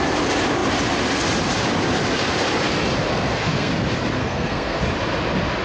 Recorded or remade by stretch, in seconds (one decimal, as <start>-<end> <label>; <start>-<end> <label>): 0.0-3.1 recorded; 3.1-3.7 remade; 3.7-4.2 recorded; 4.2-4.8 remade; 4.8-5.6 recorded